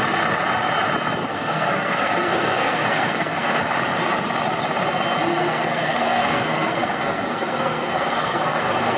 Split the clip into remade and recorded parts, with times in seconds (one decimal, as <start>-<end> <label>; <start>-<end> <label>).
0.0-1.3 recorded; 1.3-3.6 remade; 3.6-5.3 recorded; 5.3-9.0 remade